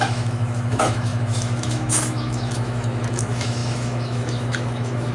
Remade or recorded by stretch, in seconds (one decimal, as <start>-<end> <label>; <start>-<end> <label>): 0.0-5.1 remade